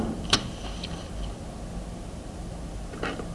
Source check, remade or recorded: recorded